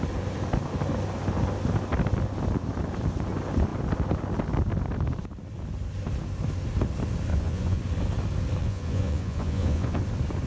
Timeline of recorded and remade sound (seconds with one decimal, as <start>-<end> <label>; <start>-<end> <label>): 0.0-7.3 recorded; 7.3-7.8 remade; 7.8-8.6 recorded; 8.6-10.0 remade; 10.0-10.5 recorded